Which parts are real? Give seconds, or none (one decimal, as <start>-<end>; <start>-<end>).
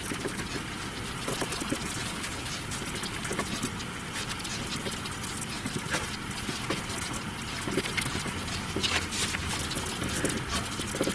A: 0.0-2.0; 2.8-11.1